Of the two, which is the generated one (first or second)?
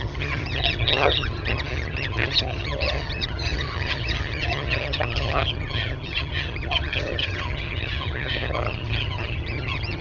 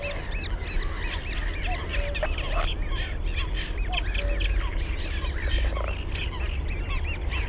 first